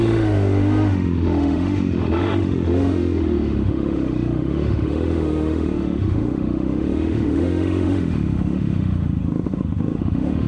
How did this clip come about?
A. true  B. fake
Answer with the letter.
B